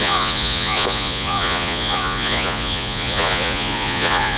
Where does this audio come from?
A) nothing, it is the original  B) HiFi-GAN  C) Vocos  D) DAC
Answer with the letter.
C